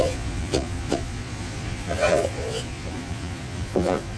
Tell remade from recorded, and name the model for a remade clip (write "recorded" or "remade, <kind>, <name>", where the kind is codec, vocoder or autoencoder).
remade, vocoder, Vocos